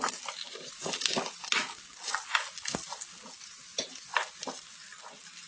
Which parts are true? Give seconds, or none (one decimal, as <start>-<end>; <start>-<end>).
0.0-0.5; 1.2-5.5